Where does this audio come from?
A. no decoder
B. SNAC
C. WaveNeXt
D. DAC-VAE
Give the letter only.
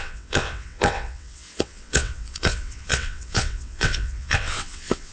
C